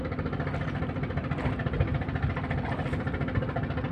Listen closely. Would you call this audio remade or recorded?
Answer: recorded